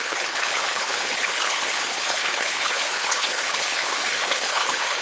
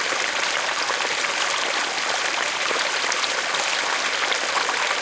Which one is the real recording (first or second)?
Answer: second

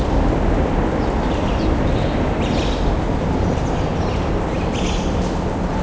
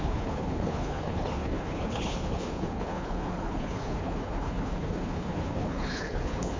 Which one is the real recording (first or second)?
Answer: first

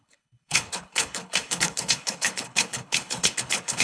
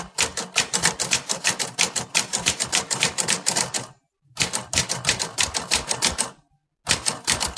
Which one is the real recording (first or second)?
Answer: second